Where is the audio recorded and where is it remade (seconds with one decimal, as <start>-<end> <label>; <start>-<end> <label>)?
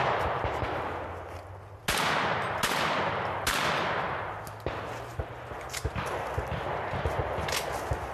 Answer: 0.0-8.1 recorded